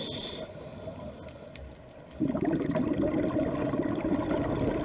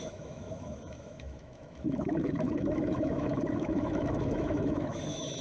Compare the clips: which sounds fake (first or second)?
second